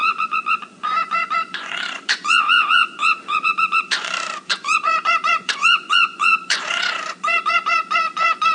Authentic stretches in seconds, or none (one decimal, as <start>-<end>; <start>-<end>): none